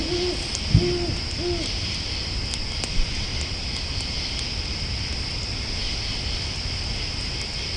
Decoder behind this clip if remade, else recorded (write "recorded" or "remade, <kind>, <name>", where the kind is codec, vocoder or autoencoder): recorded